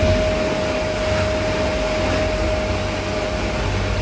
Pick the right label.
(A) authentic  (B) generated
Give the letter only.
A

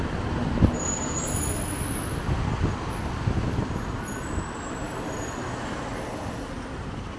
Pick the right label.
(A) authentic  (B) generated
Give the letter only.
A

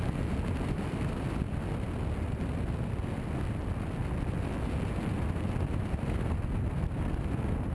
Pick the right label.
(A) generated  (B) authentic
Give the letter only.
B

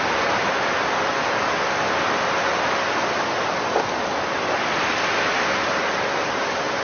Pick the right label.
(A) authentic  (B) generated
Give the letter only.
A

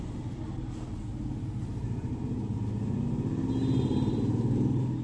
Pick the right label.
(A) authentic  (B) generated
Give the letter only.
A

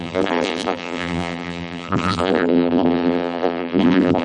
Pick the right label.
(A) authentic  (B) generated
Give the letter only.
B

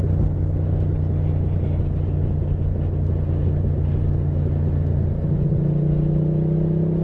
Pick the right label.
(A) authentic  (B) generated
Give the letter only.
A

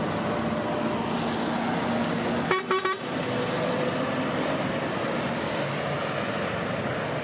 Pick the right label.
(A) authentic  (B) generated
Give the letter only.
A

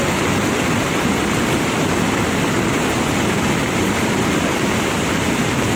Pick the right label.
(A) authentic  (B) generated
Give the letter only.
A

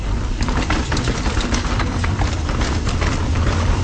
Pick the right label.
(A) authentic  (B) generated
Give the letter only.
A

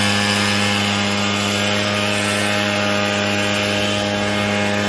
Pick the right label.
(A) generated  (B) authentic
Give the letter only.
B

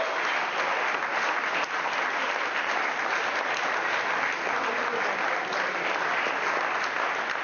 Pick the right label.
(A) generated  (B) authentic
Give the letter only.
B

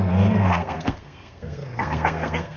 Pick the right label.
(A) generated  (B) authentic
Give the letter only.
A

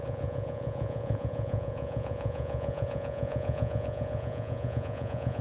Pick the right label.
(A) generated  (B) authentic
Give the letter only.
A